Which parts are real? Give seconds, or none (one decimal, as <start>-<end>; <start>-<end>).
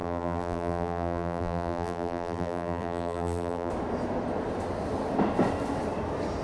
3.7-6.4